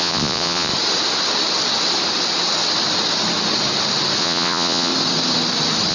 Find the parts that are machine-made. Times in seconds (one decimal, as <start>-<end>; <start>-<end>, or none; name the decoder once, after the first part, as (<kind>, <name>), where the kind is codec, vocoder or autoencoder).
0.0-0.7 (vocoder, Vocos); 4.2-4.9